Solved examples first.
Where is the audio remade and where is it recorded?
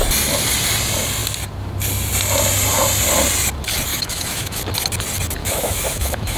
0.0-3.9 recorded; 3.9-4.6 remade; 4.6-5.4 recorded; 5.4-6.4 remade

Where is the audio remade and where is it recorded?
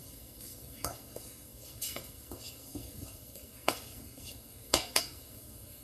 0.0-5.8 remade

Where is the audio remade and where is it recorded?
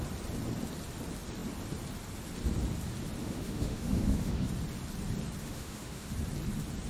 0.0-3.2 recorded; 3.2-4.5 remade; 4.5-5.4 recorded; 5.4-6.1 remade; 6.1-6.9 recorded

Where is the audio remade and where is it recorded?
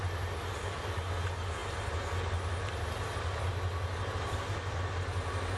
0.0-5.6 recorded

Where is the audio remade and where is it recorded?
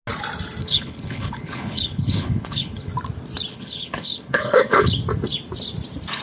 0.0-0.6 recorded; 0.6-2.9 remade; 2.9-3.5 recorded; 3.5-5.0 remade; 5.0-6.2 recorded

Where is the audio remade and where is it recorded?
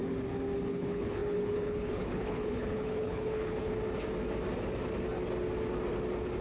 0.0-0.7 recorded; 0.7-3.7 remade; 3.7-6.4 recorded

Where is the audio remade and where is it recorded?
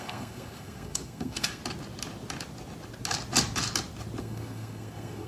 0.0-1.6 remade; 1.6-4.2 recorded; 4.2-5.3 remade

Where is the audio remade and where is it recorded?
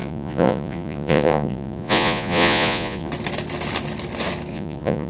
0.0-3.1 remade; 3.1-4.5 recorded; 4.5-5.1 remade